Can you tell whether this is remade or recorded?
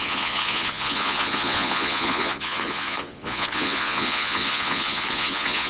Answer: remade